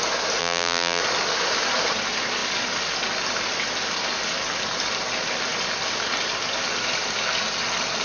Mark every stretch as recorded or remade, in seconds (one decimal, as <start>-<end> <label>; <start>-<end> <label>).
0.0-0.4 recorded; 0.4-1.0 remade; 1.0-8.0 recorded